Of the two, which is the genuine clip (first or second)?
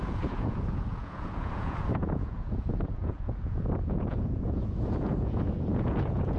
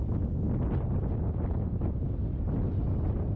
second